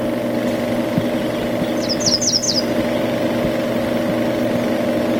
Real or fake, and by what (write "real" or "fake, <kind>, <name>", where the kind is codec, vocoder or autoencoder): real